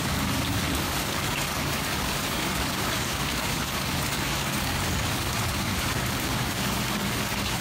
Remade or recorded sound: remade